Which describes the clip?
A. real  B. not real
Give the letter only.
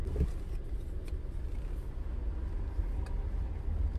A